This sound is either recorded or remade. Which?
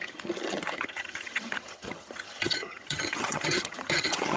remade